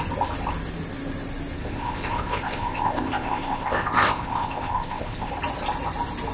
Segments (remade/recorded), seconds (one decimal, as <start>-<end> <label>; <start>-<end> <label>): 0.0-1.6 recorded; 1.6-5.3 remade; 5.3-6.3 recorded